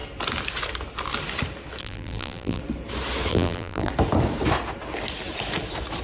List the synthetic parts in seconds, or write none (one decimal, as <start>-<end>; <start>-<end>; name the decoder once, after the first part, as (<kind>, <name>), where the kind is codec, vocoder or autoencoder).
1.8-2.6 (vocoder, BigVGAN v2); 3.3-3.9